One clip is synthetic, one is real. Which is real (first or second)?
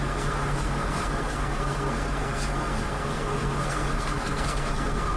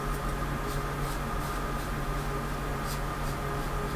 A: second